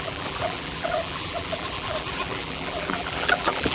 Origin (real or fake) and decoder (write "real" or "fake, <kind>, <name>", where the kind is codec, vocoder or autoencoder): fake, vocoder, BigVGAN v2